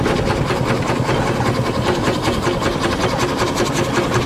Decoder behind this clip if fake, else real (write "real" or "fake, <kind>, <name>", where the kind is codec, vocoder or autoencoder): real